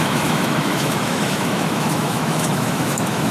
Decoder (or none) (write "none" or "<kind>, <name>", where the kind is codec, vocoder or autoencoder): autoencoder, DAC-VAE